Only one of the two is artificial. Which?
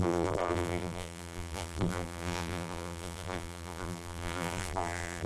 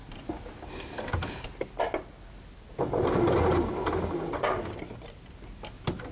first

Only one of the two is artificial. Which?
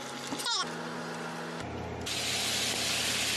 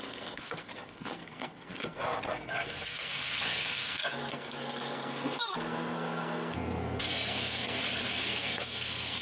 second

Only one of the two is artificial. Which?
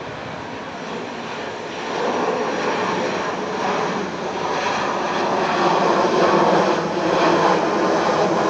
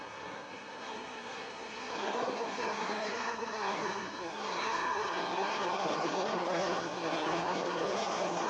second